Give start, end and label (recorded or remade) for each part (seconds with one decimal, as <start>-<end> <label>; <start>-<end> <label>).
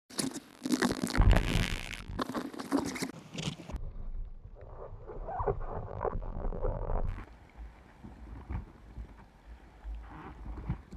0.0-0.5 recorded; 0.5-2.2 remade; 2.2-5.9 recorded; 5.9-7.2 remade; 7.2-11.0 recorded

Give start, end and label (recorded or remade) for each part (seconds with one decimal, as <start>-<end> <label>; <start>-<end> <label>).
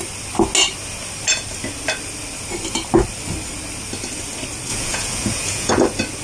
0.0-4.7 recorded; 4.7-5.7 remade; 5.7-6.2 recorded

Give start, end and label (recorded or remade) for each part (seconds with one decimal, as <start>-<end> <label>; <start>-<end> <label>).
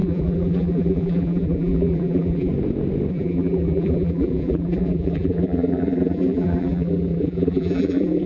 0.0-2.5 remade; 2.5-3.1 recorded; 3.1-8.3 remade